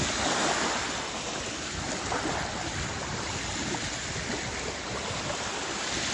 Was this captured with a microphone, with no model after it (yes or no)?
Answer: yes